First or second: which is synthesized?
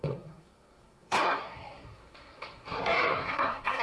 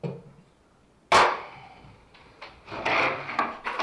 first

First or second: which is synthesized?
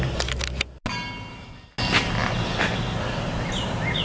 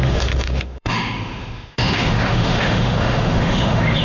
second